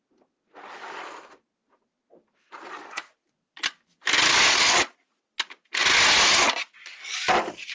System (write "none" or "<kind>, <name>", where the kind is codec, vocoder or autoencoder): none